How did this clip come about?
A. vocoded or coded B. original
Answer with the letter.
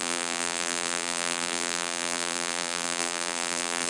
A